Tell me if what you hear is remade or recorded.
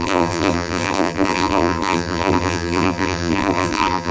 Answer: remade